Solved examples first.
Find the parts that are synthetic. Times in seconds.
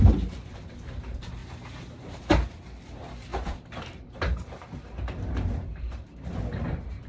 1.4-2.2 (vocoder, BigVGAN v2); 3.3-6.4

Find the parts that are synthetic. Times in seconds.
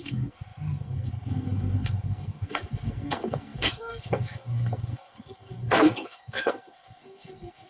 0.0-7.7 (codec, SNAC)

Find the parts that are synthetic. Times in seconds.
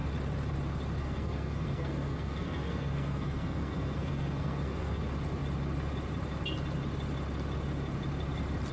1.0-5.0 (codec, SNAC)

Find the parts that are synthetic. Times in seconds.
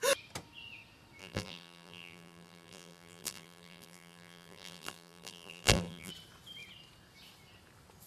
1.2-6.1 (vocoder, BigVGAN v2)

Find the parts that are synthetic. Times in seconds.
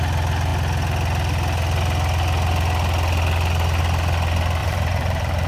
4.6-5.5 (vocoder, BigVGAN v2)